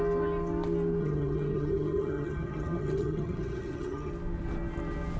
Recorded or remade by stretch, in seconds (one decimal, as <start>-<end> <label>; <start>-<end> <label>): 0.0-1.0 recorded; 1.0-4.1 remade; 4.1-5.2 recorded